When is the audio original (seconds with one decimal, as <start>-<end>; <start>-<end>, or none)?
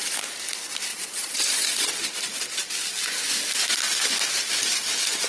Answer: 0.0-0.9; 1.9-5.3